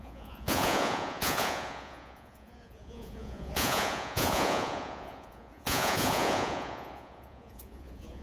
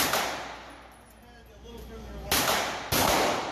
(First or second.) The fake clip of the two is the first